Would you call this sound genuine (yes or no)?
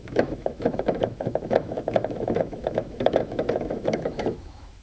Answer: no